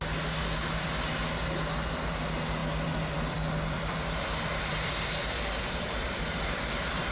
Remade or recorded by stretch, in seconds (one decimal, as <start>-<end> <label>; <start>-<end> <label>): 0.0-2.6 recorded; 2.6-7.1 remade